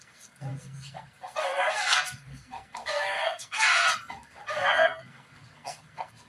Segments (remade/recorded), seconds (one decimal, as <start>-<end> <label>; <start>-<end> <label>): 0.0-6.3 remade